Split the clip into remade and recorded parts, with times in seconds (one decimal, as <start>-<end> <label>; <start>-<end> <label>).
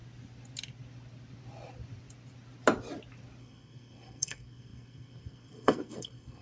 0.0-3.4 recorded; 3.4-6.4 remade